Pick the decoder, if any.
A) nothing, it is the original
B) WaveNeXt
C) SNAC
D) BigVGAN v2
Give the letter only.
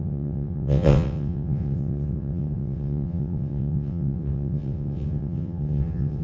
B